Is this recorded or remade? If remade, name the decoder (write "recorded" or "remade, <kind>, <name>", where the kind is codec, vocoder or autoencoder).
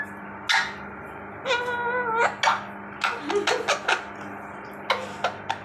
recorded